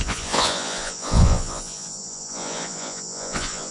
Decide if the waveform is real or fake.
fake